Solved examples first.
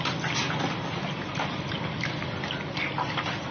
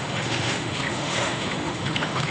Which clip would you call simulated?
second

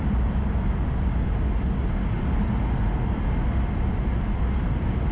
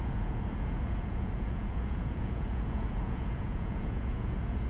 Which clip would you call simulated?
second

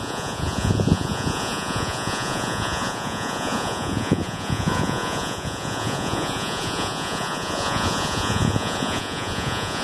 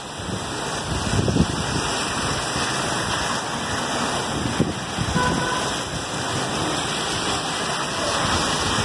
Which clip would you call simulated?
first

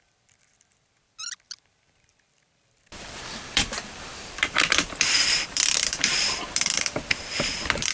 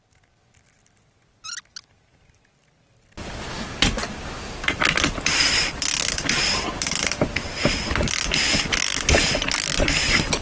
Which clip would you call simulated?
first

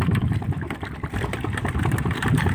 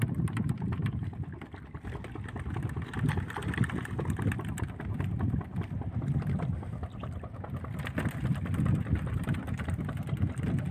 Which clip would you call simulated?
first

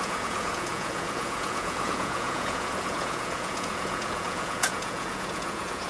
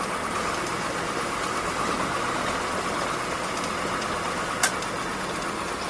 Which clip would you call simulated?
first